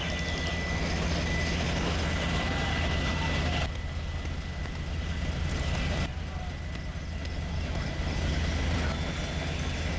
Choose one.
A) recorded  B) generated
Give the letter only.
A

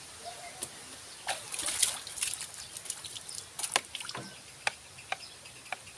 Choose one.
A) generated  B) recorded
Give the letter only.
B